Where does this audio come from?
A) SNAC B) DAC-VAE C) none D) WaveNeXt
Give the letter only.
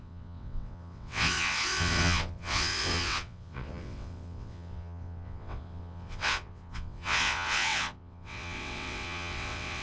D